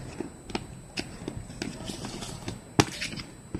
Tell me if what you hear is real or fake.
real